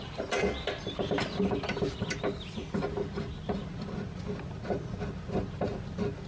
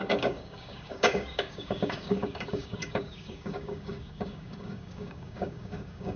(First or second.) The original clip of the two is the first